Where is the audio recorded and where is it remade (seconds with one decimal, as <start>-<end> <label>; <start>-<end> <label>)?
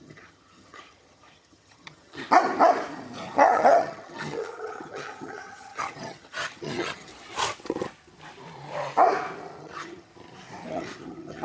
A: 0.0-2.2 remade; 2.2-3.3 recorded; 3.3-7.1 remade; 7.1-9.6 recorded; 9.6-10.1 remade; 10.1-10.7 recorded; 10.7-11.4 remade